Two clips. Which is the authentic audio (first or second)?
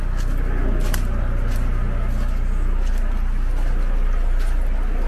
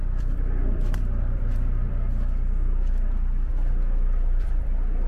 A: first